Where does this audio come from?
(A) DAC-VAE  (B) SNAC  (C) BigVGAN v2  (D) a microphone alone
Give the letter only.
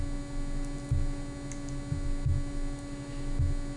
D